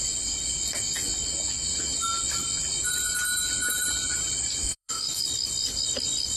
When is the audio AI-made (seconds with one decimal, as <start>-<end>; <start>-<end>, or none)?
4.6-5.2